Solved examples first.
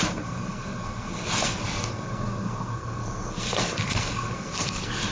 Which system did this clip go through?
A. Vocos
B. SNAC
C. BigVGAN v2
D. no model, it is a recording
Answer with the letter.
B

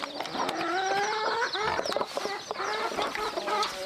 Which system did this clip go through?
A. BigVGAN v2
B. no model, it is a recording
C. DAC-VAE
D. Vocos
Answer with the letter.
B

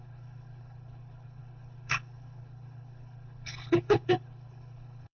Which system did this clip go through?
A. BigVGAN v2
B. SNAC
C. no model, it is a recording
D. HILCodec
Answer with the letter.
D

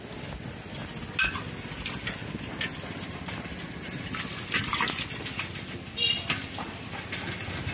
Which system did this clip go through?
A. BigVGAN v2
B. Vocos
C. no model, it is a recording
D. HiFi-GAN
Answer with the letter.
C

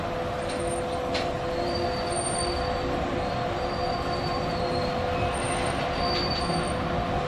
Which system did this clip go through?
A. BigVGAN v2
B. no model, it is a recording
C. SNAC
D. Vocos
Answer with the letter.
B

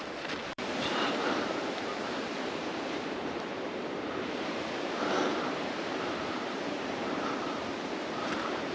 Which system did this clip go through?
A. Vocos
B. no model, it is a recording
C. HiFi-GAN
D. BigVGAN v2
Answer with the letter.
D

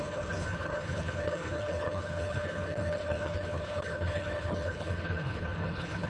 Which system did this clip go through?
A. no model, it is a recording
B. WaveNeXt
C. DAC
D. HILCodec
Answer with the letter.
D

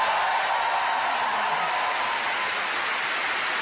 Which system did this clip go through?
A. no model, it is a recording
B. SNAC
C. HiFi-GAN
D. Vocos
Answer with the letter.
A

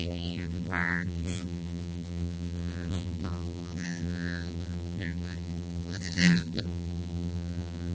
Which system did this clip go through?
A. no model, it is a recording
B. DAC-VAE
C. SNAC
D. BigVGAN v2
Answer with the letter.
D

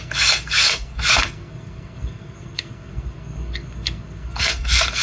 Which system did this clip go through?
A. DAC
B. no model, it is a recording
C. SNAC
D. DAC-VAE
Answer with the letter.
C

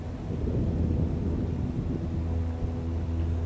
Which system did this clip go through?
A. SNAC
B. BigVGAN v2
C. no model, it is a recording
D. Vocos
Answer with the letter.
C